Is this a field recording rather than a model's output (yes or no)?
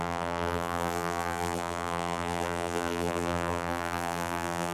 no